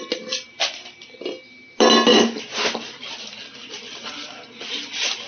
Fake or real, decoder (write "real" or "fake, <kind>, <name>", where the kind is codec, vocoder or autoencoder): real